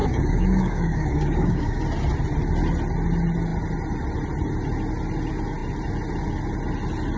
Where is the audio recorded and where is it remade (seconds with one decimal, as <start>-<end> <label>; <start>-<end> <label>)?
0.0-1.8 remade; 1.8-7.2 recorded